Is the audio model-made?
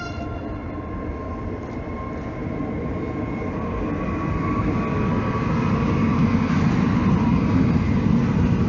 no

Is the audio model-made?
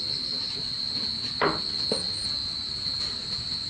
no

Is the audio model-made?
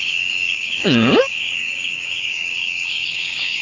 yes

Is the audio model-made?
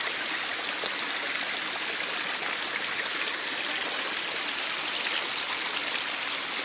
no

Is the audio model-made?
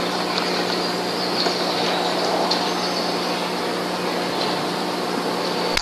no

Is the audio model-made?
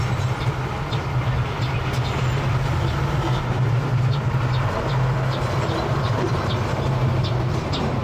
no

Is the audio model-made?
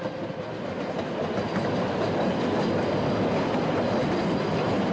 no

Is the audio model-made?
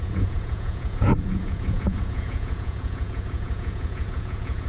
yes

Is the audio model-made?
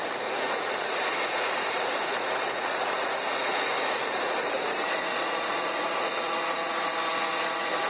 yes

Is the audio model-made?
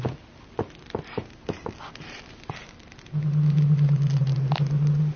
no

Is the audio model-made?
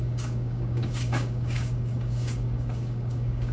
yes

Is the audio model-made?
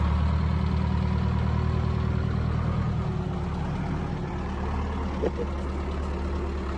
no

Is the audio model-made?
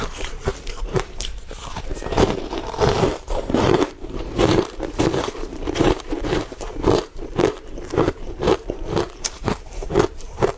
yes